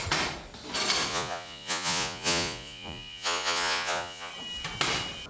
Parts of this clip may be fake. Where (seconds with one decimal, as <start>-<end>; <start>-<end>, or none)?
1.1-4.3